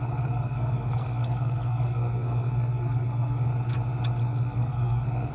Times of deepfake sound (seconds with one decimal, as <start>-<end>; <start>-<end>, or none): 0.0-3.5; 4.2-5.3